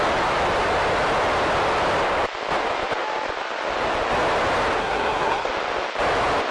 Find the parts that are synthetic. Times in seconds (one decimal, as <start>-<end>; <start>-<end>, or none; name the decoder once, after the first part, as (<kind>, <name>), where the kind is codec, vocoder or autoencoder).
4.8-5.5 (codec, SNAC)